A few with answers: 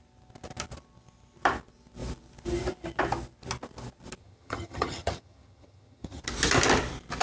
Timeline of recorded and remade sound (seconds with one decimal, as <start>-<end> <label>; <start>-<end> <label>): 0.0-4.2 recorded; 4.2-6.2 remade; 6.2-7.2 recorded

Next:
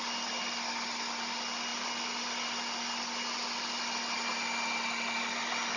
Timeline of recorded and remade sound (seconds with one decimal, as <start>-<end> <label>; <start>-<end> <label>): 0.0-5.8 recorded

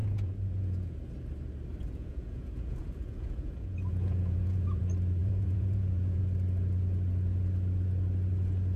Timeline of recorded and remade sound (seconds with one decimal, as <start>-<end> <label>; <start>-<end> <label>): 0.0-0.9 remade; 0.9-1.8 recorded; 1.8-4.8 remade; 4.8-5.2 recorded; 5.2-6.2 remade; 6.2-8.8 recorded

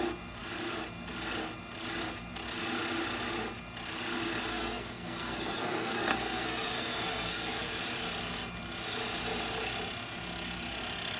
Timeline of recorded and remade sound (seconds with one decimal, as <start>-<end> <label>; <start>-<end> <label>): 0.0-4.5 recorded; 4.5-7.8 remade; 7.8-11.2 recorded

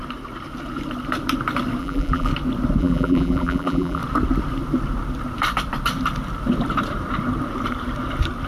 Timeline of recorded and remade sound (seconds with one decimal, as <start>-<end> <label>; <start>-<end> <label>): 0.0-1.8 recorded; 1.8-2.3 remade; 2.3-2.8 recorded; 2.8-4.0 remade; 4.0-8.5 recorded

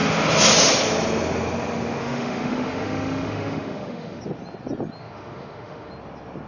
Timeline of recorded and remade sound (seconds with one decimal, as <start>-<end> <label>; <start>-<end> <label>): 0.0-2.0 recorded; 2.0-4.2 remade; 4.2-5.0 recorded; 5.0-5.9 remade; 5.9-6.5 recorded

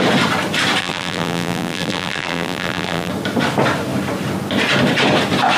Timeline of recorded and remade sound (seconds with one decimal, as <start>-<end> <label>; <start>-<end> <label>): 0.0-0.8 recorded; 0.8-3.1 remade; 3.1-5.6 recorded

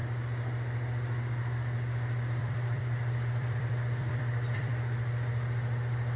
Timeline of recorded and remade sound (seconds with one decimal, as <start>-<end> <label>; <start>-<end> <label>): 0.0-2.4 recorded; 2.4-4.7 remade; 4.7-6.2 recorded